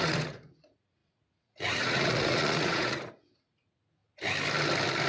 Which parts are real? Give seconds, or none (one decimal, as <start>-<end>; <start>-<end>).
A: 4.0-5.1